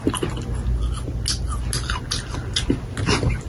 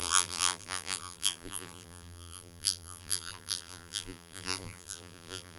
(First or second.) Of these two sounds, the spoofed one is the second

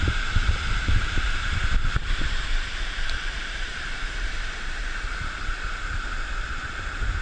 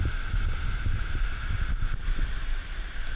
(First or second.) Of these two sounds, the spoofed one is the first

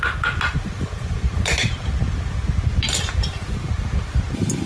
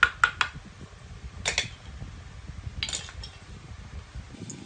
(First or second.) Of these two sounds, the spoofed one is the first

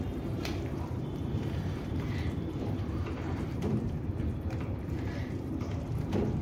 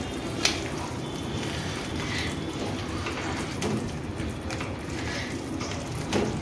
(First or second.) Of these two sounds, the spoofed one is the first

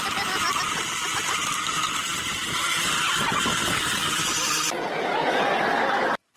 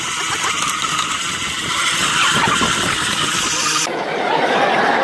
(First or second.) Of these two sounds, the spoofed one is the second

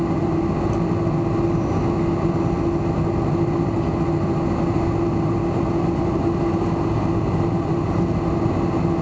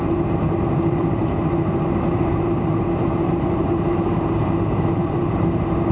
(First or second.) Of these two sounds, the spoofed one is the second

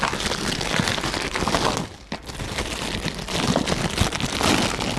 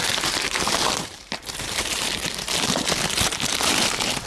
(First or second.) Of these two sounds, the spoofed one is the second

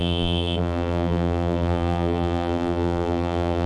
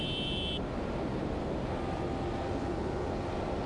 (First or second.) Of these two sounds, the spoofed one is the first